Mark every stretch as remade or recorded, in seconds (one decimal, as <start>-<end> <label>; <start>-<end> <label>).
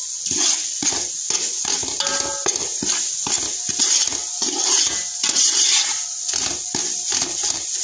0.0-7.8 recorded